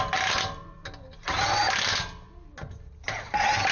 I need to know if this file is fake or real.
real